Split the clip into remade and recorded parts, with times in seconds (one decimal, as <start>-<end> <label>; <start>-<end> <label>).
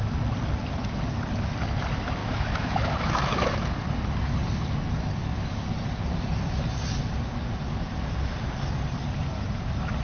0.0-2.2 recorded; 2.2-3.7 remade; 3.7-10.0 recorded